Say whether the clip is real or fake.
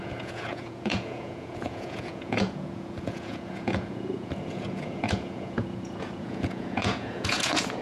fake